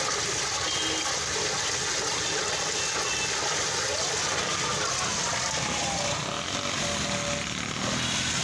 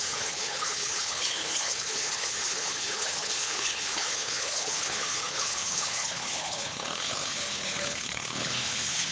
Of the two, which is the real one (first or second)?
first